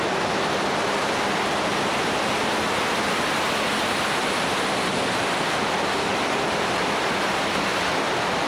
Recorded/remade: recorded